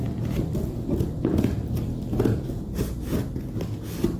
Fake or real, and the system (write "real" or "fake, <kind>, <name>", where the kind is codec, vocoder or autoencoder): real